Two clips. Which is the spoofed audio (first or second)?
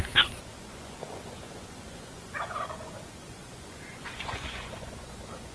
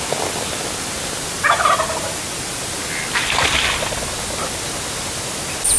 first